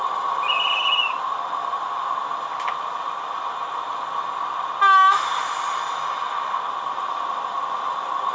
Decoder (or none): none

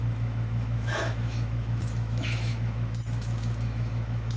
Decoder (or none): autoencoder, DAC-VAE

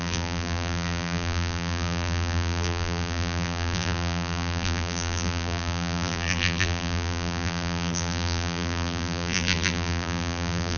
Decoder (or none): vocoder, BigVGAN v2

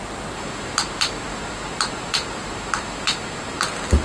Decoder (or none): none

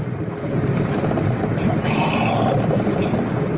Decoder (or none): vocoder, BigVGAN v2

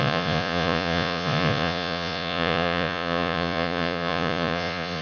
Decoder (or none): vocoder, Vocos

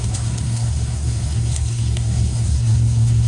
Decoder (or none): codec, SNAC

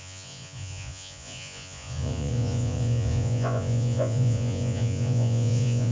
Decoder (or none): vocoder, Vocos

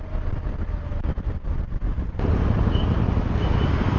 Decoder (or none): none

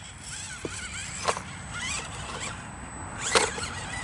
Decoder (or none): none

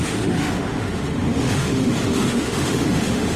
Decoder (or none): autoencoder, DAC-VAE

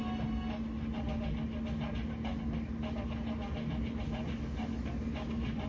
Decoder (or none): none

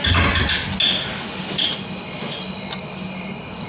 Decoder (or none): none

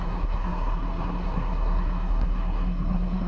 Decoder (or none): codec, SNAC